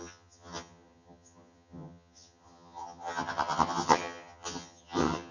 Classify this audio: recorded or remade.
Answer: remade